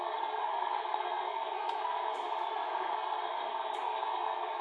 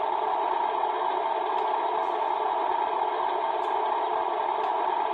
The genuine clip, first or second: second